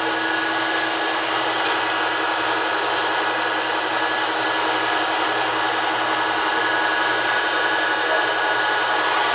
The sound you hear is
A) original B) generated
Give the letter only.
A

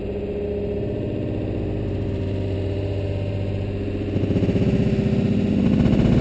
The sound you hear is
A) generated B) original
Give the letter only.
B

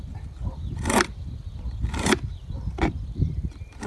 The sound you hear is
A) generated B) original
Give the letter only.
B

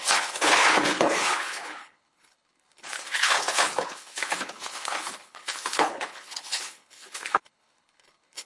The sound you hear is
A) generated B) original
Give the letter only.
A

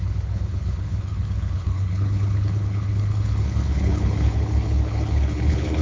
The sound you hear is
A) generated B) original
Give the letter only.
A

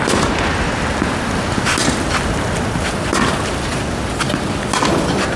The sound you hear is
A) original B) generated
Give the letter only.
A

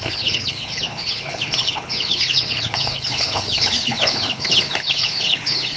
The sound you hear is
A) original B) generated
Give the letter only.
B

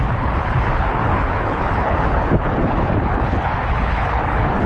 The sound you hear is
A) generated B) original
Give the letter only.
A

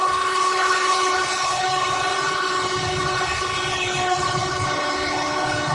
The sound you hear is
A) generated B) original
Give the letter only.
A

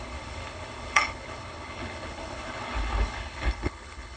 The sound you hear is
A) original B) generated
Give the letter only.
B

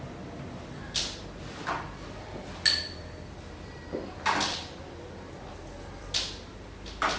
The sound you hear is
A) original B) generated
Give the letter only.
A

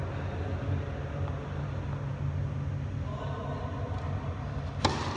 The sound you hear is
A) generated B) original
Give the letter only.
B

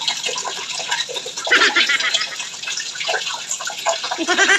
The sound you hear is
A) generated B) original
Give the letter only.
B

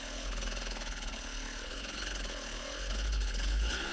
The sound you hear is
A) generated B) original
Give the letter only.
A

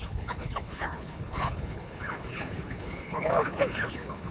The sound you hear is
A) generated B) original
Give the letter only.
A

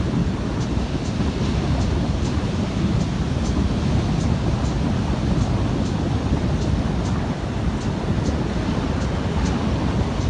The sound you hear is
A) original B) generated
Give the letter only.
A